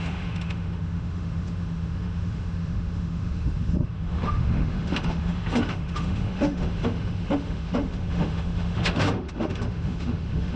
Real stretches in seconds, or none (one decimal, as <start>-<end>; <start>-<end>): none

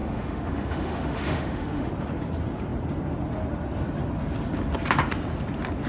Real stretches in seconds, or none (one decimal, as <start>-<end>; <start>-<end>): 1.9-5.9

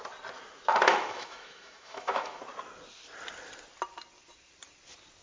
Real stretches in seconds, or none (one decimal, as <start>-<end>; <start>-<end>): 0.0-0.9; 2.4-5.2

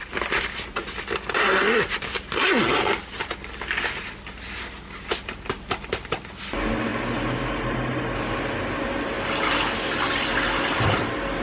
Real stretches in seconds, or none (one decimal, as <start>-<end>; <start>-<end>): 0.0-11.4

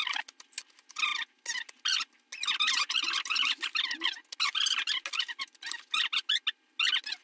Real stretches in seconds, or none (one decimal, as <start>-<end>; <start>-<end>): 0.0-7.2

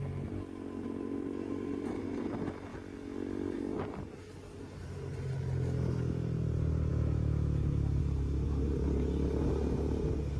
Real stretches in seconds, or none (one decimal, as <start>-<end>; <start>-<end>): 0.0-6.9; 8.0-10.4

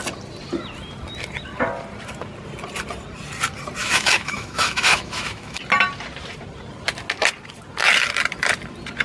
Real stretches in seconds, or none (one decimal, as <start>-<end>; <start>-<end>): 0.0-3.8; 5.6-9.0